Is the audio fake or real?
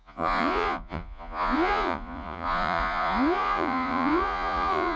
fake